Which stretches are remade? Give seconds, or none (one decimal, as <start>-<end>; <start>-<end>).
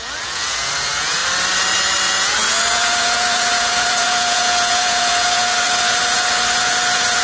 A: 0.0-1.2; 2.0-7.2